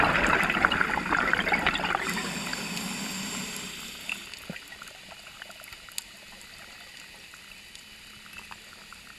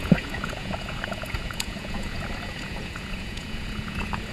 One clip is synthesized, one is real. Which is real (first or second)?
first